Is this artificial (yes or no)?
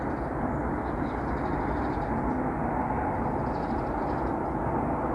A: no